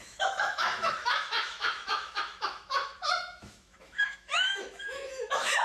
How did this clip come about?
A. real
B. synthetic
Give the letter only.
B